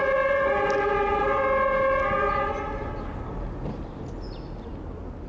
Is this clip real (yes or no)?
yes